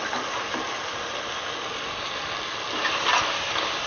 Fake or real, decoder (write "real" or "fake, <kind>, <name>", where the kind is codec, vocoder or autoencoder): real